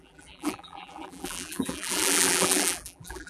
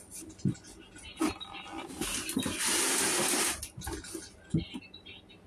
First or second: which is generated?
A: first